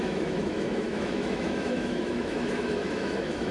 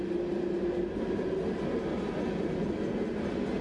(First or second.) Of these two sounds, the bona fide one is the second